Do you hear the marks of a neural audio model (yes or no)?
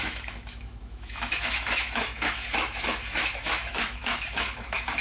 yes